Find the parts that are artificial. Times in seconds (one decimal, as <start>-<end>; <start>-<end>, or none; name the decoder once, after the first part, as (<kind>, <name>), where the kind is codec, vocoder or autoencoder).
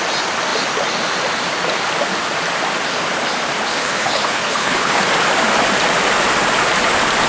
3.7-5.0 (codec, HILCodec)